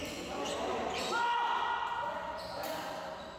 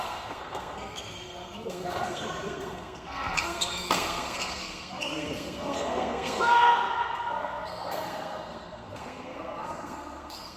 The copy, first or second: second